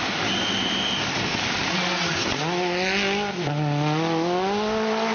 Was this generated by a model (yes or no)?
no